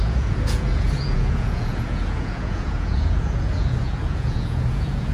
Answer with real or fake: fake